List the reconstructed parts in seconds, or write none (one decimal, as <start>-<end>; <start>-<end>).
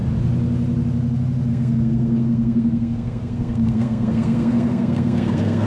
1.5-5.7